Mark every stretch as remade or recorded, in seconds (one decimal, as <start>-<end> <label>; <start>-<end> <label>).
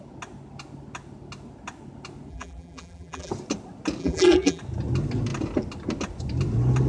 0.0-2.3 recorded; 2.3-3.3 remade; 3.3-4.0 recorded; 4.0-4.6 remade; 4.6-6.9 recorded